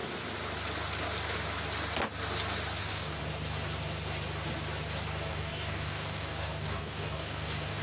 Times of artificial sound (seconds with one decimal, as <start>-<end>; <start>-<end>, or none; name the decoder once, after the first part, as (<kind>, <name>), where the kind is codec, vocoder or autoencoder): 2.8-3.2 (codec, DAC); 5.3-7.8